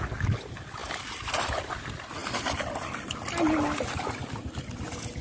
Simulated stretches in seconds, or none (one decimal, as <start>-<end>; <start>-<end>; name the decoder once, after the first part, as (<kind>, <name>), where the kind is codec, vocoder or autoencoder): none